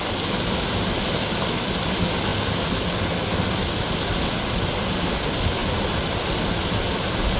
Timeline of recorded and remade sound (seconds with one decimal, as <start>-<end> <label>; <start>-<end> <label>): 0.0-7.4 recorded